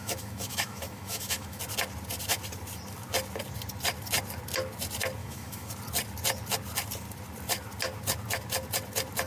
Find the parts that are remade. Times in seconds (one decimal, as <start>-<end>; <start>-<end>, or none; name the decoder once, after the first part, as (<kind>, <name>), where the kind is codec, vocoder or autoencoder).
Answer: 0.0-1.6 (autoencoder, DAC-VAE); 5.2-5.7